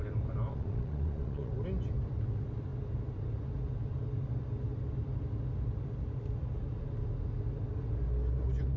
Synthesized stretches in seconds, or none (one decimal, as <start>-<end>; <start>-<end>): 0.5-1.5